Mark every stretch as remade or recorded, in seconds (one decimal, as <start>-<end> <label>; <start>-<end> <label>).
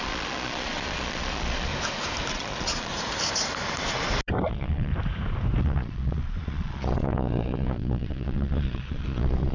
0.0-1.7 remade; 1.7-2.3 recorded; 2.3-2.9 remade; 2.9-4.5 recorded; 4.5-4.9 remade; 4.9-5.6 recorded; 5.6-9.5 remade